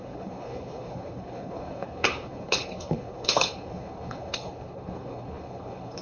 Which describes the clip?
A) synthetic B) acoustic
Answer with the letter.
A